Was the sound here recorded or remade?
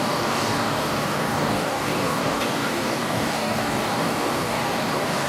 remade